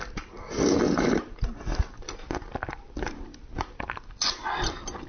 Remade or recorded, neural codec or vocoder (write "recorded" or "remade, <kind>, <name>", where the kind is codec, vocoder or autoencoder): recorded